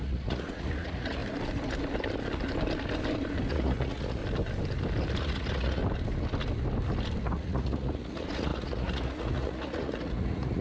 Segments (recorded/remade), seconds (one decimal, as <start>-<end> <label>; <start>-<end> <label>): 0.0-1.2 remade; 1.2-3.5 recorded; 3.5-4.2 remade; 4.2-5.2 recorded; 5.2-5.8 remade; 5.8-7.2 recorded; 7.2-10.6 remade